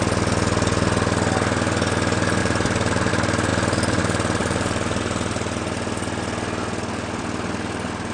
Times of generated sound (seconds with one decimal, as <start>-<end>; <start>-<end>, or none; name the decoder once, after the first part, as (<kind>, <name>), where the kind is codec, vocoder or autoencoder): 2.4-3.1 (vocoder, BigVGAN v2); 3.5-4.0; 4.4-5.0